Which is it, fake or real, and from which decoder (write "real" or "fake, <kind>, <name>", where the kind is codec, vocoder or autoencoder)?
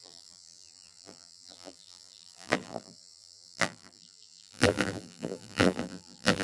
fake, vocoder, BigVGAN v2